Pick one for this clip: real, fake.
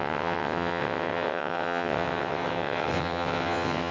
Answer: fake